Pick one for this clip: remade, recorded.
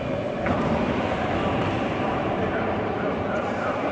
remade